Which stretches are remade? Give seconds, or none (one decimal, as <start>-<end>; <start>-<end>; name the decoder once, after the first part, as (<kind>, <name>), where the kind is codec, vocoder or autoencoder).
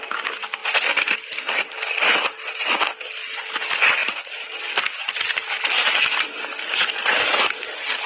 0.6-1.7 (vocoder, BigVGAN v2)